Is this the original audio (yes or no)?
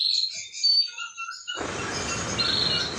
yes